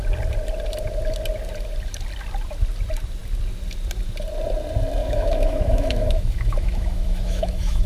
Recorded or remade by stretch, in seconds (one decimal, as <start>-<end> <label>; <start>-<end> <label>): 0.0-5.0 recorded; 5.0-7.9 remade